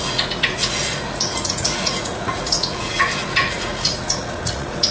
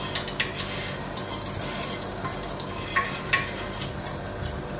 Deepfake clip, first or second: first